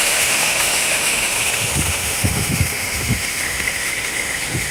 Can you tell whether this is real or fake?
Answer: fake